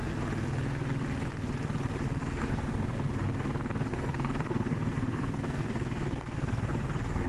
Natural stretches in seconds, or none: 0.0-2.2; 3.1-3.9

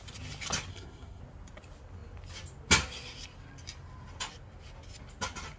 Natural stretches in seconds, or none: 0.0-0.7; 1.2-5.6

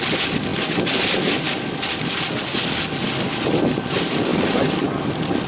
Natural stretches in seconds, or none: 0.0-5.5

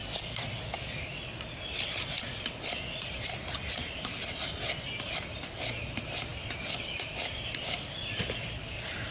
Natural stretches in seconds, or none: 0.0-9.1

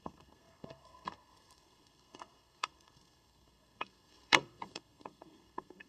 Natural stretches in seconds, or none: none

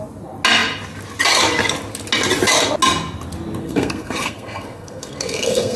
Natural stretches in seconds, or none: 0.0-3.6